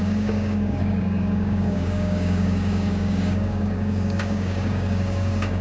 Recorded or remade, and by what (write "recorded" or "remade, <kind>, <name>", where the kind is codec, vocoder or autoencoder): remade, codec, DAC